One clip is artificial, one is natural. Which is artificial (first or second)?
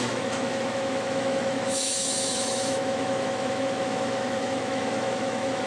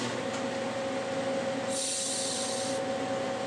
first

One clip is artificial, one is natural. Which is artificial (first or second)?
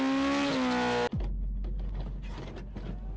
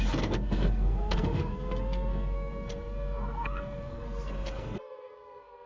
second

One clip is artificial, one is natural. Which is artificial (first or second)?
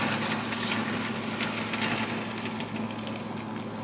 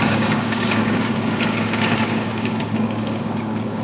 second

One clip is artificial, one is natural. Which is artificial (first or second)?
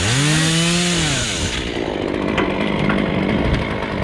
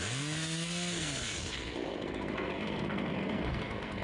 second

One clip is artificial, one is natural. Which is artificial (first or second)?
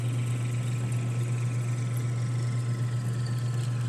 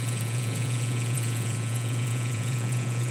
second